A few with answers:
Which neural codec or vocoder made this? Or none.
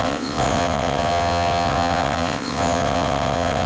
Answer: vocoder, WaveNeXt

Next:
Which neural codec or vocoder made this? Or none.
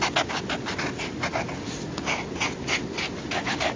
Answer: none